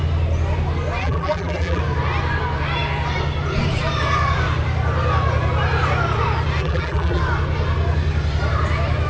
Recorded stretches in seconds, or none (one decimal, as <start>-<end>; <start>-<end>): 0.0-1.0; 1.8-6.6; 7.2-9.1